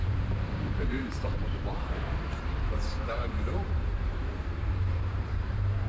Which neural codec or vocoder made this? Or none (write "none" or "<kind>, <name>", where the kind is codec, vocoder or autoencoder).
vocoder, BigVGAN v2